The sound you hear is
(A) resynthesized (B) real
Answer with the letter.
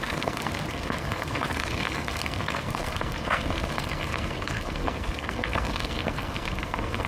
A